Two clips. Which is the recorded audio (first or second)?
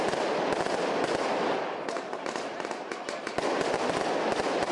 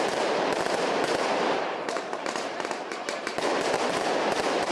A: first